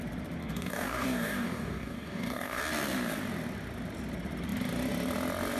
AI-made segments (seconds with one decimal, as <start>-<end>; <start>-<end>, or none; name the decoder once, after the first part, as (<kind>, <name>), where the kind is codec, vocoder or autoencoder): 0.4-2.6 (codec, DAC)